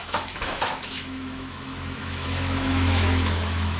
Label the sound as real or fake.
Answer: fake